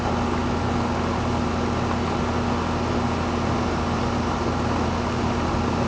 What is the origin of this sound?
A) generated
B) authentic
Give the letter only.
B